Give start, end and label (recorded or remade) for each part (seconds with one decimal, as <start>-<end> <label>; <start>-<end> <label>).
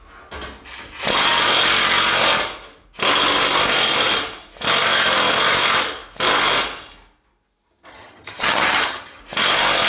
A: 0.0-7.9 recorded; 7.9-9.2 remade; 9.2-9.9 recorded